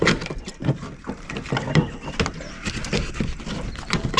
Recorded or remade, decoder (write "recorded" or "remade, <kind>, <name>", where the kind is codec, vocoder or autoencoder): recorded